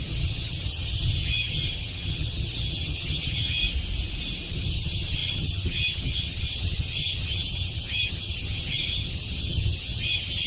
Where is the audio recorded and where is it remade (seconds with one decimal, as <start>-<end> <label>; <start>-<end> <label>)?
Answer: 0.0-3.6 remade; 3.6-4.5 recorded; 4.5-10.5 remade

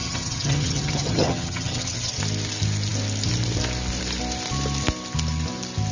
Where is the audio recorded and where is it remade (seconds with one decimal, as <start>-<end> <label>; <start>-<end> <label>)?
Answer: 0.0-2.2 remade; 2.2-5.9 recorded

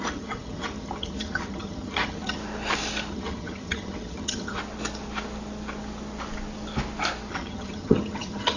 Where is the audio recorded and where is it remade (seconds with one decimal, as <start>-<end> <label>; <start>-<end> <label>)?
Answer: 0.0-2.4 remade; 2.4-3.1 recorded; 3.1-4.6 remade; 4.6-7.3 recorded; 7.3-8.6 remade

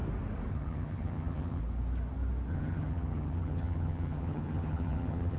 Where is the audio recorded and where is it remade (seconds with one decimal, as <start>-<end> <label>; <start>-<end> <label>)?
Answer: 0.0-0.5 recorded; 0.5-1.6 remade; 1.6-2.5 recorded; 2.5-5.4 remade

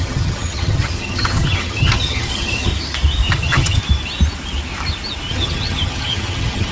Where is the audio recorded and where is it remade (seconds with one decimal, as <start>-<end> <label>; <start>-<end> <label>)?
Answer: 0.0-2.7 remade; 2.7-3.3 recorded; 3.3-3.8 remade; 3.8-5.3 recorded; 5.3-6.7 remade